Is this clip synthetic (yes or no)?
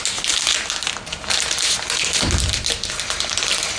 no